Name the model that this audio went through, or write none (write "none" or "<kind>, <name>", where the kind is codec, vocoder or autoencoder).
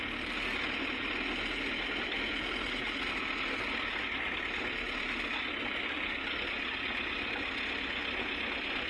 none